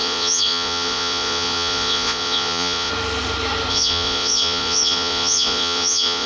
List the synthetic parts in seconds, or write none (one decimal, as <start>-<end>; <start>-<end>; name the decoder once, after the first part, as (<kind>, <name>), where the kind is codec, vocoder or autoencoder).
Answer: 0.0-2.9 (vocoder, Vocos); 3.7-6.3